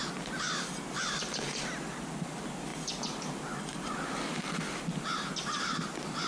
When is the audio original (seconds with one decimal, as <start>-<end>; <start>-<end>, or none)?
0.0-6.3